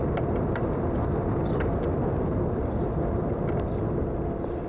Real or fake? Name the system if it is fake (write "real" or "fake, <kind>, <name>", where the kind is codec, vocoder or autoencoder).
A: real